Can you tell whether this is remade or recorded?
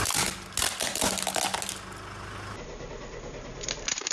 recorded